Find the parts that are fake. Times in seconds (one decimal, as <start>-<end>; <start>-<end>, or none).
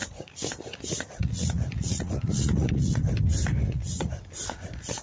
0.0-3.0; 3.5-4.1